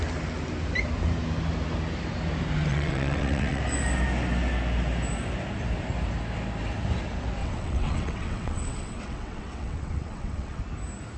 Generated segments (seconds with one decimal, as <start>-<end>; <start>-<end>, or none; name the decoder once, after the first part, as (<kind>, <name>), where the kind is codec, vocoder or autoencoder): 2.7-3.6 (vocoder, WaveNeXt); 7.4-10.6